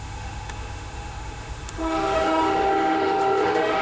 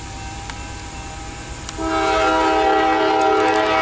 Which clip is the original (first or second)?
second